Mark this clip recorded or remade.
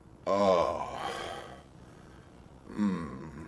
remade